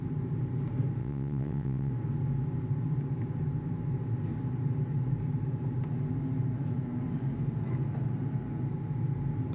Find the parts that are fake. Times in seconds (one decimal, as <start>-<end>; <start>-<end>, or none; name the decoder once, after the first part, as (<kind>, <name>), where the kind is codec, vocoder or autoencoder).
1.0-1.9 (vocoder, WaveNeXt)